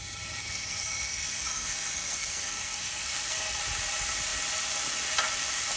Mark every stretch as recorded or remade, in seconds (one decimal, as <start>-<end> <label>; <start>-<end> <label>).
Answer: 0.0-0.4 recorded; 0.4-3.6 remade; 3.6-5.8 recorded